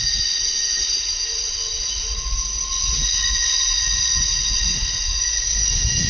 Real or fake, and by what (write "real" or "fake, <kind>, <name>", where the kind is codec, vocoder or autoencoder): fake, vocoder, Vocos